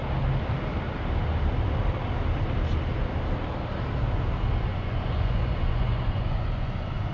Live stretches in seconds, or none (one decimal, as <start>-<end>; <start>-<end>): 0.0-4.7